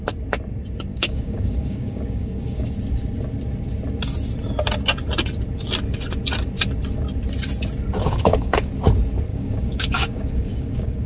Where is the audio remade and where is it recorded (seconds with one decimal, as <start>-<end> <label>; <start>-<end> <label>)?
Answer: 0.0-0.9 recorded; 0.9-2.7 remade; 2.7-8.0 recorded; 8.0-8.7 remade; 8.7-9.3 recorded; 9.3-11.1 remade